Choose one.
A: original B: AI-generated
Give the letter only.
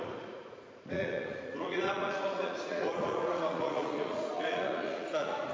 B